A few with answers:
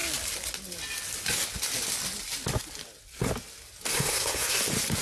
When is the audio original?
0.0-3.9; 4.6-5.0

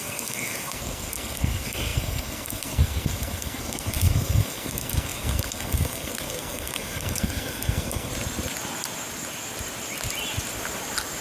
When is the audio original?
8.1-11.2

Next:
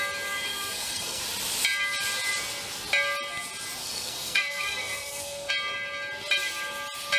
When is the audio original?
0.0-0.5; 1.2-3.8; 5.5-7.2